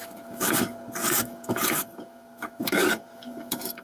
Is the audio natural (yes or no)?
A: no